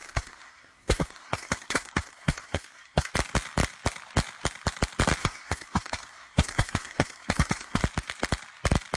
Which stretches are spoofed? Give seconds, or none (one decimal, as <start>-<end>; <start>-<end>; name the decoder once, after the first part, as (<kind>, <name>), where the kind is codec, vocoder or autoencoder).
0.0-3.1 (codec, SNAC); 5.2-7.8